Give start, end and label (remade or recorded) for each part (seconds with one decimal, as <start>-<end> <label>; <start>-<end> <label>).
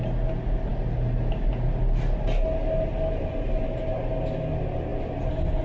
0.0-5.6 recorded